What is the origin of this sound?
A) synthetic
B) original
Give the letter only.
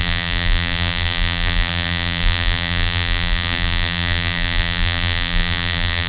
A